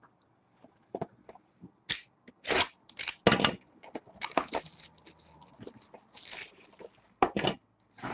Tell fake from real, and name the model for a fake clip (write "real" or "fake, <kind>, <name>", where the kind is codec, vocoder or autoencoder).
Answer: real